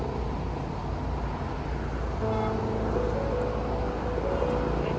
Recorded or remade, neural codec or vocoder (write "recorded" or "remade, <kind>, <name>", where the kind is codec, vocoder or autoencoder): recorded